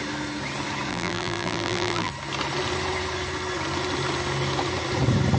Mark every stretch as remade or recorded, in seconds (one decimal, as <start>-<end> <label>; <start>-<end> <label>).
0.0-0.9 recorded; 0.9-2.1 remade; 2.1-5.4 recorded